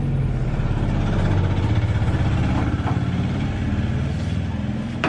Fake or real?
real